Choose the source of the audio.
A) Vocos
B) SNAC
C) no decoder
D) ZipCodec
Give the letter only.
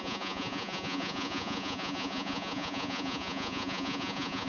A